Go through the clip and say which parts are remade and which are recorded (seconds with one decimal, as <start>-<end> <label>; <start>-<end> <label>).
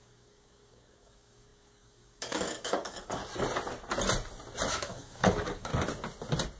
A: 0.0-3.2 remade; 3.2-4.7 recorded; 4.7-5.7 remade; 5.7-6.6 recorded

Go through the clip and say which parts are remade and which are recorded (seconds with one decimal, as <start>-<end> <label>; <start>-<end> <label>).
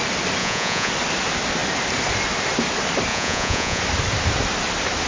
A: 0.0-0.4 recorded; 0.4-0.9 remade; 0.9-3.1 recorded; 3.1-3.8 remade; 3.8-5.1 recorded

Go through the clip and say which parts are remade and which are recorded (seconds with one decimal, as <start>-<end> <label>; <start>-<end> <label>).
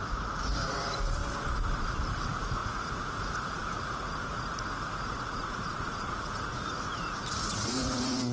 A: 0.0-1.2 remade; 1.2-2.1 recorded; 2.1-8.3 remade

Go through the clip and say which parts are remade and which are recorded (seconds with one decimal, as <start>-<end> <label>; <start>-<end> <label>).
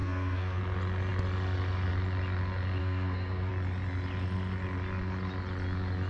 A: 0.0-0.6 remade; 0.6-2.8 recorded; 2.8-3.5 remade; 3.5-6.1 recorded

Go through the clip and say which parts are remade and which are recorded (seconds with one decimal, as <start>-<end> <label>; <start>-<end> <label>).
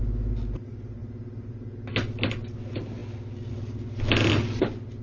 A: 0.0-5.0 recorded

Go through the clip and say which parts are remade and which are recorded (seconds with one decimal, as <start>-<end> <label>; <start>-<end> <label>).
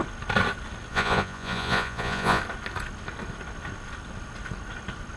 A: 0.0-0.9 recorded; 0.9-2.4 remade; 2.4-5.2 recorded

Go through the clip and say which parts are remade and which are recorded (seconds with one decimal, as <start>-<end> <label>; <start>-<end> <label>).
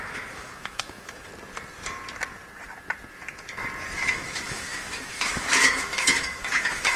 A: 0.0-1.3 remade; 1.3-4.1 recorded; 4.1-7.0 remade